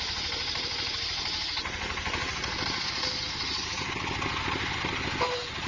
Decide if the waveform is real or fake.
real